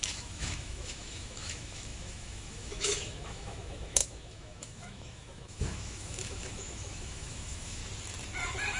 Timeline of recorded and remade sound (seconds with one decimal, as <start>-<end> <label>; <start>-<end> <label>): 0.0-7.8 remade; 7.8-8.8 recorded